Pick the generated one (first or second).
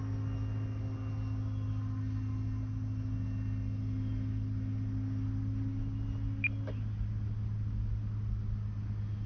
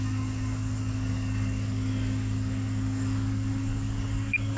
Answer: second